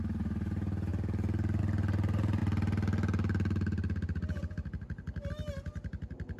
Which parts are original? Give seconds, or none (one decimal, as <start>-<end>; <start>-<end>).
0.0-6.4